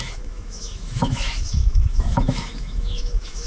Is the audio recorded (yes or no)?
no